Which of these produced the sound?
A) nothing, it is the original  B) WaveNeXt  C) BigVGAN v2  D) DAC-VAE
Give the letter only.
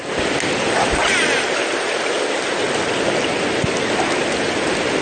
A